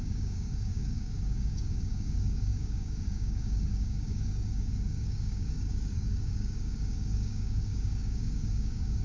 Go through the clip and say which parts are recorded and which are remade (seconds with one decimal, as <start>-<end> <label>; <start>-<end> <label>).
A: 0.0-9.0 remade